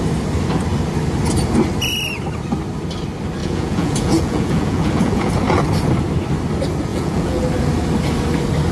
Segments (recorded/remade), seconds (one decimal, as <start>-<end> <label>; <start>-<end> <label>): 0.0-3.4 recorded; 3.4-5.3 remade; 5.3-6.9 recorded; 6.9-7.4 remade; 7.4-8.7 recorded